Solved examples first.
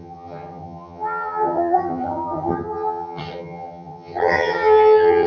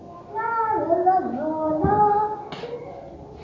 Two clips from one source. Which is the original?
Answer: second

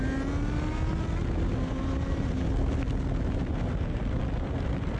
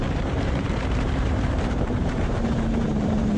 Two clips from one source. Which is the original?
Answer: first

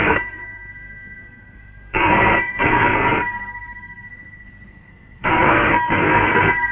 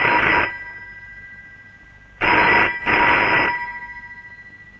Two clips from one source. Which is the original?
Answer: second